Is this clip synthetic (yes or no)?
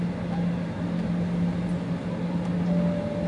no